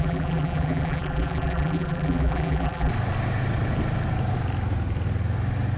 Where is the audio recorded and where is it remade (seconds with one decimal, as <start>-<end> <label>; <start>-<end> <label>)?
0.0-2.9 remade; 2.9-5.8 recorded